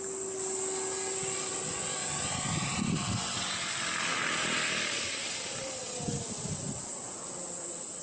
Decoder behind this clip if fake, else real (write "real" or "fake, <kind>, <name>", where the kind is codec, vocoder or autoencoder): real